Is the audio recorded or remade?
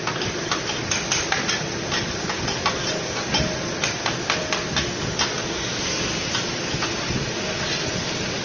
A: recorded